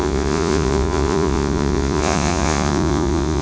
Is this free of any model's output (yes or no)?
no